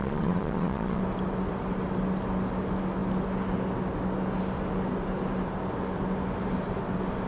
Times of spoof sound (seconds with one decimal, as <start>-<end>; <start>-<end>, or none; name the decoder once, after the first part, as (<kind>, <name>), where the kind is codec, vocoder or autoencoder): 0.0-1.0 (vocoder, Vocos)